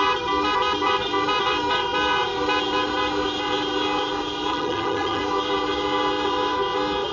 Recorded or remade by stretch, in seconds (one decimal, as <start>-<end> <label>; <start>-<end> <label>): 0.0-4.5 recorded; 4.5-5.2 remade; 5.2-7.1 recorded